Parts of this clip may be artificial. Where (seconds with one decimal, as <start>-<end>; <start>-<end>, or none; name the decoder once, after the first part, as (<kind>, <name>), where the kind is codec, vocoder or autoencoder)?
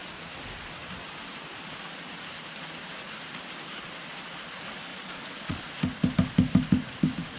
4.9-5.7 (vocoder, Vocos)